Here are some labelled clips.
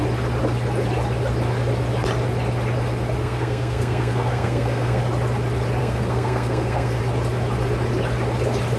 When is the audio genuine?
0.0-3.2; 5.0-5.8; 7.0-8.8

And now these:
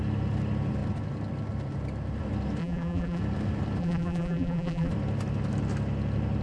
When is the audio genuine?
0.0-2.6; 3.2-3.8; 4.9-6.4

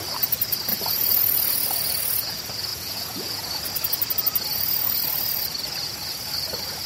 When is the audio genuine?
0.0-0.7; 1.2-2.7; 3.6-4.5; 5.0-6.9